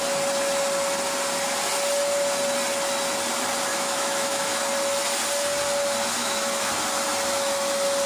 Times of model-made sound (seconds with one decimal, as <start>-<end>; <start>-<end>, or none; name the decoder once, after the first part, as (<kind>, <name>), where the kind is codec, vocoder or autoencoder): 3.7-4.6 (autoencoder, DAC-VAE); 6.2-6.7